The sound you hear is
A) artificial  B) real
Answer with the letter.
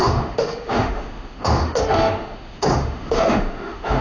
A